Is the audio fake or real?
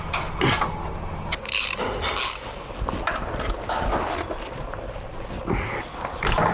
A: real